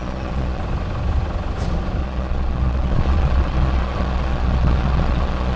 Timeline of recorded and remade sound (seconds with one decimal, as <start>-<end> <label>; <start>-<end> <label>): 0.0-0.6 remade; 0.6-2.0 recorded; 2.0-5.6 remade